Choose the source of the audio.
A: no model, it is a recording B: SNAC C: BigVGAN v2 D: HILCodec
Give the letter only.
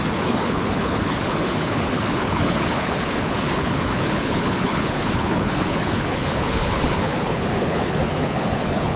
D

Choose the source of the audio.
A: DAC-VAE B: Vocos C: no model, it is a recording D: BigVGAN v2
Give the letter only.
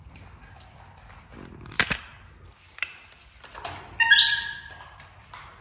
C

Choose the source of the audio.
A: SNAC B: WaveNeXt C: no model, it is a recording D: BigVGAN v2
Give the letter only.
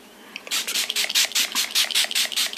D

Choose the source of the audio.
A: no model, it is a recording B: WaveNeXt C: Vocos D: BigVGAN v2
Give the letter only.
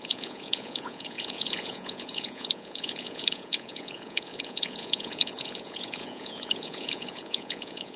C